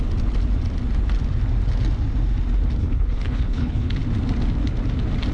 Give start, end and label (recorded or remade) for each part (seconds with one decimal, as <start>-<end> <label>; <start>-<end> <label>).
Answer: 0.0-2.8 recorded; 2.8-3.9 remade; 3.9-5.3 recorded